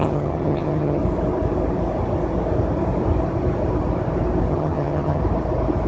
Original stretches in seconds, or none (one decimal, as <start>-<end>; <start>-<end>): 1.0-4.5; 5.2-5.9